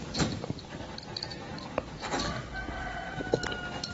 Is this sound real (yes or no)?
no